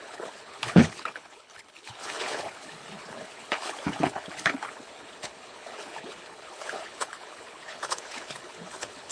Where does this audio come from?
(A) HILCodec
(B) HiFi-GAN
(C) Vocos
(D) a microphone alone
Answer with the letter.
A